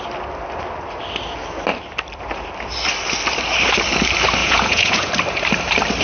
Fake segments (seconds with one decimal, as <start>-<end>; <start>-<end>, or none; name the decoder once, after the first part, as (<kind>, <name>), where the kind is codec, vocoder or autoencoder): 4.4-5.1 (vocoder, Vocos)